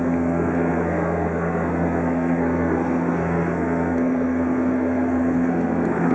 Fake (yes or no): yes